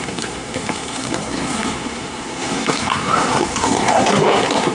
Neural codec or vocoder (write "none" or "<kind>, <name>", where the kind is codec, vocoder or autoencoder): codec, SNAC